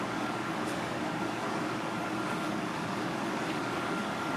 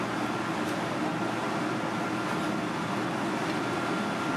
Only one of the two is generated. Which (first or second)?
first